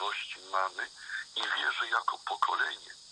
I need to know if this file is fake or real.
fake